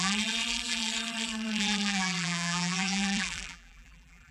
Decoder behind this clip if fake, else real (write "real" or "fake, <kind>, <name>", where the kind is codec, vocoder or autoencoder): fake, vocoder, BigVGAN v2